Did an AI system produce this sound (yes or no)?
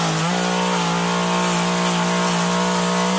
no